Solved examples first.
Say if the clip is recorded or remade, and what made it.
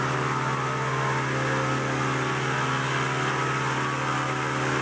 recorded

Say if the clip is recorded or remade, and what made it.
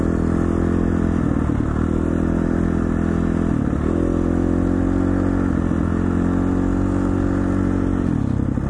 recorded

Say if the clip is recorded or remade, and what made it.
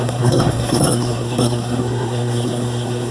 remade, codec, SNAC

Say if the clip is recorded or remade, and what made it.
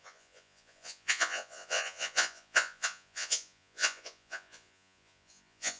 remade, vocoder, Vocos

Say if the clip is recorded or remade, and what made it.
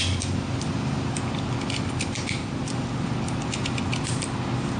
recorded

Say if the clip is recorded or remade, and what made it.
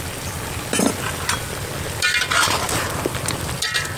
recorded